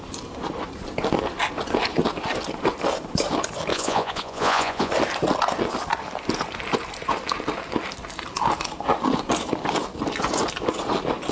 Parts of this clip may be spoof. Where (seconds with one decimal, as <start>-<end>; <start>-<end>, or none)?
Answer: 3.7-4.9